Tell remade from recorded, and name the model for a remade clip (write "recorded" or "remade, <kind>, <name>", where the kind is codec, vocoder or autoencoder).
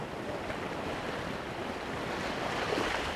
recorded